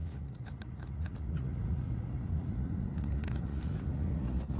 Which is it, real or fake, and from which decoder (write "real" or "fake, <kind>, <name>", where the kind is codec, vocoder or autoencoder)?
fake, vocoder, Vocos